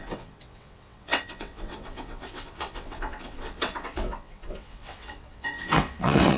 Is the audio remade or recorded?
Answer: remade